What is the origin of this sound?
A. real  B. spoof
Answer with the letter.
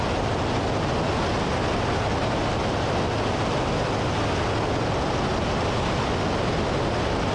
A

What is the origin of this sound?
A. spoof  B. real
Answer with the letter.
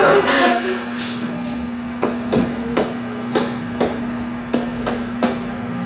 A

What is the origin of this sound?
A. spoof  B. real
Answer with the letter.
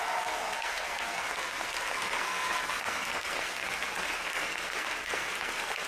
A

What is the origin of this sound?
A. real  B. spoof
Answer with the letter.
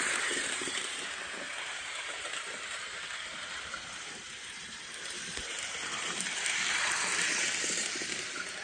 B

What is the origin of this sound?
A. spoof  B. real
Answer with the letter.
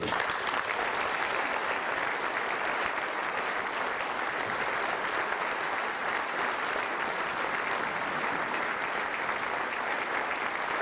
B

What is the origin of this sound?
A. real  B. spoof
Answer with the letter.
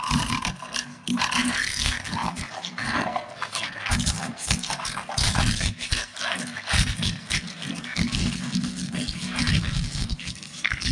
B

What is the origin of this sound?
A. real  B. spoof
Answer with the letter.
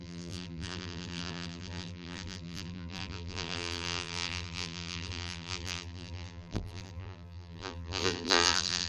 B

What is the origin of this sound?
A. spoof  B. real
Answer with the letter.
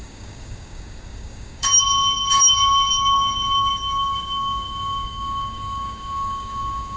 A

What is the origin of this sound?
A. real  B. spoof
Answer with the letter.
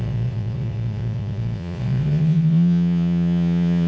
B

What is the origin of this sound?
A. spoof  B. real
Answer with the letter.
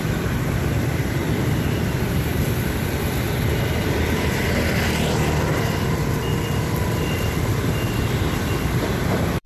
A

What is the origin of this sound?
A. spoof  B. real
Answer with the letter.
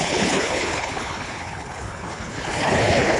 A